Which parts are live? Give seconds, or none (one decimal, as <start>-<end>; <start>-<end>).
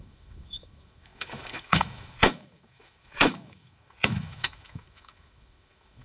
none